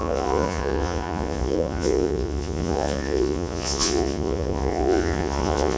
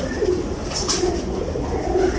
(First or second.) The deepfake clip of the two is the first